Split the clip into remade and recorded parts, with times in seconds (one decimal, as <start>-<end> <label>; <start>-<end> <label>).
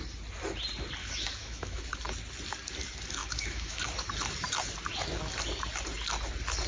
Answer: 0.0-1.0 recorded; 1.0-1.8 remade; 1.8-3.2 recorded; 3.2-3.8 remade; 3.8-6.7 recorded